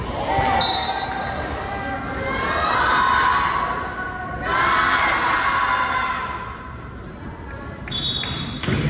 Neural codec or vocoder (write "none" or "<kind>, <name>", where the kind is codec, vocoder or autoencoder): none